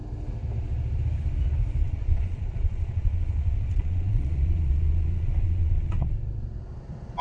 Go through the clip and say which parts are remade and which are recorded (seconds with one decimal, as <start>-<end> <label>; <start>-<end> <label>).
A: 0.0-1.8 recorded; 1.8-6.1 remade; 6.1-7.2 recorded